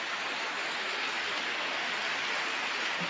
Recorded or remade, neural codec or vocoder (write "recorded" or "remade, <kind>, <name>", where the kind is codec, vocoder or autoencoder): recorded